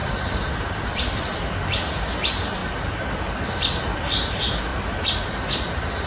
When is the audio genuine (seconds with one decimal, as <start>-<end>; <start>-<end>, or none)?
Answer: 0.0-6.1